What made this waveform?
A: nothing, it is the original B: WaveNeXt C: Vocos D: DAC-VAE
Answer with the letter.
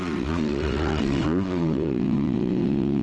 B